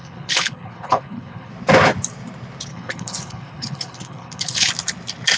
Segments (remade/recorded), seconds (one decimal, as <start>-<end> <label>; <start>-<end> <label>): 0.0-1.5 remade; 1.5-2.7 recorded; 2.7-4.7 remade; 4.7-5.4 recorded